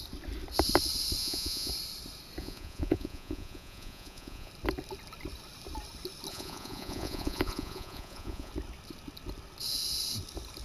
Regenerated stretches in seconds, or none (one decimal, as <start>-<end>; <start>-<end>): 1.2-1.7; 2.4-4.5; 6.3-8.5